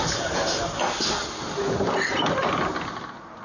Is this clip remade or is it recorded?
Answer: recorded